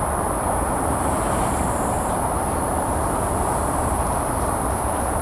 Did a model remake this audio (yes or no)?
yes